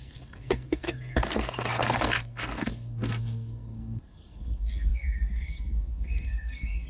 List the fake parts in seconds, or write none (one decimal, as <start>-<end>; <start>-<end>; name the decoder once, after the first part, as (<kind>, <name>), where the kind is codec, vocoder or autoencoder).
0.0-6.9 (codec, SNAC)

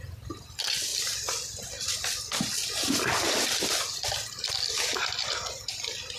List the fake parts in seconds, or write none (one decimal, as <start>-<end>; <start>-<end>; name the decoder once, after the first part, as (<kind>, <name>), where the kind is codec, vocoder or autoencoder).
none

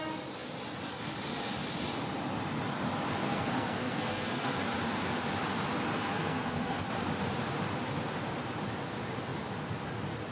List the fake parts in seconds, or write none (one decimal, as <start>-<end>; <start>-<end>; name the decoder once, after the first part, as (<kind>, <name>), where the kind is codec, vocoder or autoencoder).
3.2-4.6 (codec, SNAC); 6.1-6.8

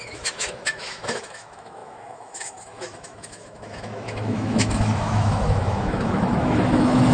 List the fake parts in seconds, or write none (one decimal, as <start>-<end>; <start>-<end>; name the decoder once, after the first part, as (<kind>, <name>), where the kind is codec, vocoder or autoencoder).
0.0-7.1 (autoencoder, DAC-VAE)